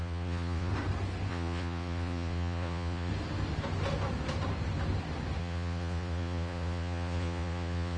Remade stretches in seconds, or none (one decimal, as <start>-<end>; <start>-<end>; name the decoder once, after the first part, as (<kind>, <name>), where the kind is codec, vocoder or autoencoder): 0.0-0.7 (vocoder, Vocos); 1.3-3.1; 5.4-8.0